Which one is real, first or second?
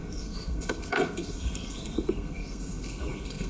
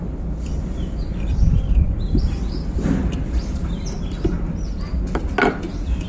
second